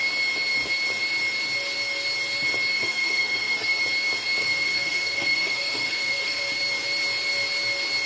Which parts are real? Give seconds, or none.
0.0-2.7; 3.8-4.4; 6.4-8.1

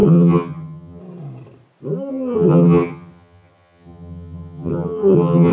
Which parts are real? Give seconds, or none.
1.0-2.1

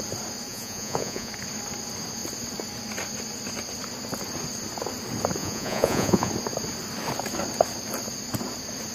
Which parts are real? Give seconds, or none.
0.0-0.5; 1.3-5.4; 6.3-8.9